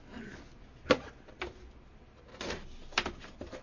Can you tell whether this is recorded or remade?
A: recorded